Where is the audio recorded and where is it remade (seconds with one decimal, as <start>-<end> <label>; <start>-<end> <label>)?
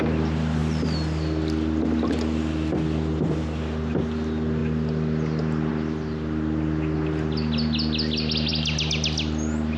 0.0-9.8 recorded